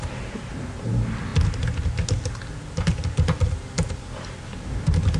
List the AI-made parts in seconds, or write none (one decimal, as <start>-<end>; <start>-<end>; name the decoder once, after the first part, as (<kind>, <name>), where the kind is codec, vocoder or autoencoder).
none